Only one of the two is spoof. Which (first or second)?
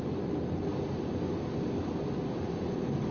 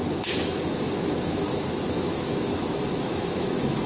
second